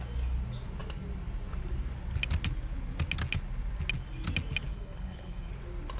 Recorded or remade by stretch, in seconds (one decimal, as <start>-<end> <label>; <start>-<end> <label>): 0.0-4.7 recorded; 4.7-5.5 remade; 5.5-6.0 recorded